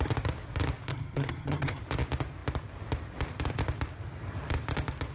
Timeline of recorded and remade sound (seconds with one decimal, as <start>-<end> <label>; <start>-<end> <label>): 0.0-0.9 recorded; 0.9-1.8 remade; 1.8-5.1 recorded